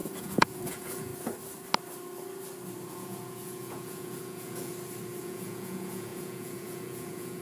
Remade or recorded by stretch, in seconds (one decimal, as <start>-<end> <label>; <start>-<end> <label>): 0.0-1.1 remade; 1.1-2.9 recorded; 2.9-4.7 remade; 4.7-5.2 recorded; 5.2-7.4 remade